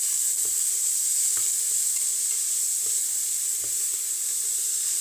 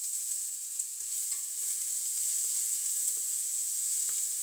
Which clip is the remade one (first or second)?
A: second